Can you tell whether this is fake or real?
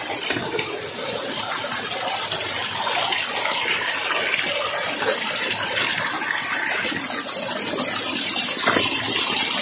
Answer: real